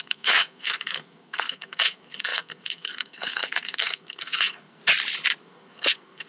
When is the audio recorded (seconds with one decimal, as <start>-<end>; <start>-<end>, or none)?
4.8-5.4